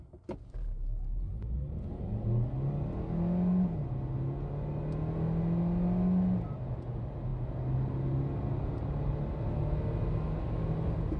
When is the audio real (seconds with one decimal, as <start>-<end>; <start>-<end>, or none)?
0.0-11.2